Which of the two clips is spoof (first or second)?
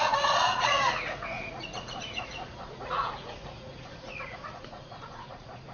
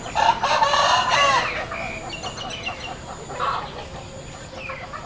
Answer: first